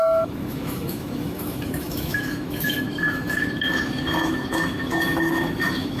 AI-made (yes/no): yes